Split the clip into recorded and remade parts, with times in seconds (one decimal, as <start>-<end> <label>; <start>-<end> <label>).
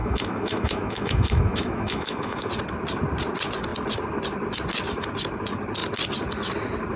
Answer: 0.0-2.5 remade; 2.5-7.0 recorded